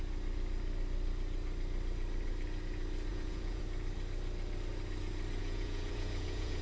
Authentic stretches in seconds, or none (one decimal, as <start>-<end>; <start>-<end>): 0.0-3.1; 3.6-5.4